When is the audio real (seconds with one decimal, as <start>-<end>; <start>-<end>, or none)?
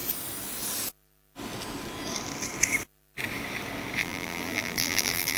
0.0-4.0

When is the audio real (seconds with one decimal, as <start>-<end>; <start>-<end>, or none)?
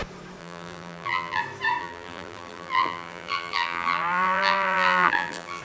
0.0-0.4; 1.4-1.8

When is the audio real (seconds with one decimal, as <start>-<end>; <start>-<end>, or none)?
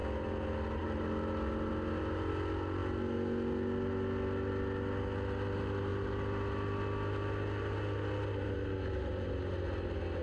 0.0-10.2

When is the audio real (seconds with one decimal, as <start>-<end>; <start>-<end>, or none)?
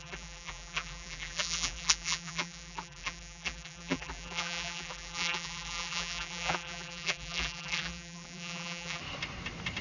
9.0-9.8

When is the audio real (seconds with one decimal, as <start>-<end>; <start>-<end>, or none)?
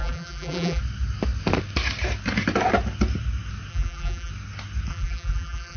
0.8-3.7; 4.3-4.9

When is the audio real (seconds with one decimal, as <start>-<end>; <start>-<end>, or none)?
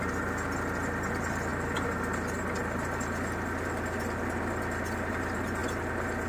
0.0-6.3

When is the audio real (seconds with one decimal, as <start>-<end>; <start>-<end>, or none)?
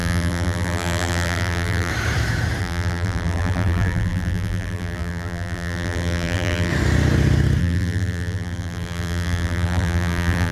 1.9-2.6; 6.7-7.6